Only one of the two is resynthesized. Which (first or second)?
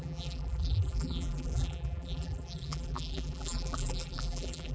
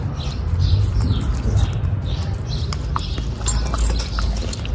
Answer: first